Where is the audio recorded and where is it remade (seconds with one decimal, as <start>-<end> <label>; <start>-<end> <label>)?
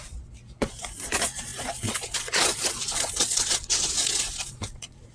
0.0-5.1 remade